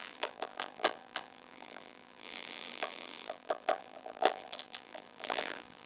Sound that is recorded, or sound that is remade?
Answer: remade